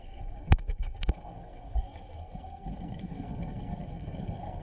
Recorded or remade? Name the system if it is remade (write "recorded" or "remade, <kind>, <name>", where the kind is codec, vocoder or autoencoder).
remade, codec, SNAC